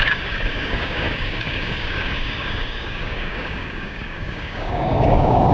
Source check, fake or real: fake